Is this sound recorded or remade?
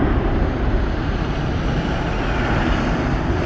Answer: recorded